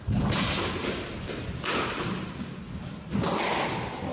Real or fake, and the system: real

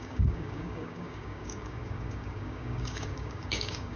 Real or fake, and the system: fake, codec, DAC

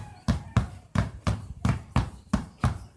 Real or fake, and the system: fake, vocoder, BigVGAN v2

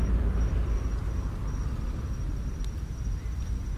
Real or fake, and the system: real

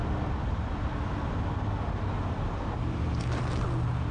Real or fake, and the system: real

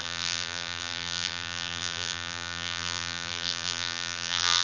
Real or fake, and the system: fake, vocoder, BigVGAN v2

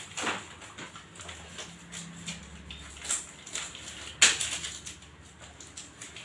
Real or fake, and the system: real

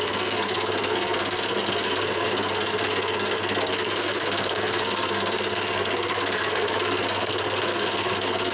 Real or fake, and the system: fake, codec, SNAC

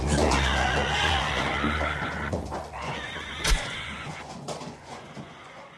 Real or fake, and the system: fake, vocoder, Vocos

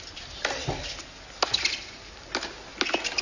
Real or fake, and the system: real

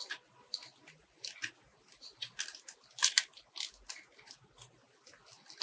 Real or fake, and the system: real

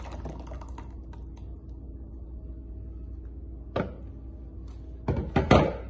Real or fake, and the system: real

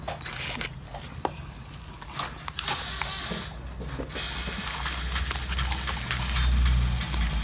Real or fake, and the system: real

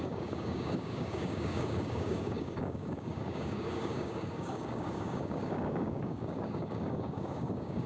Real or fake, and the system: fake, codec, DAC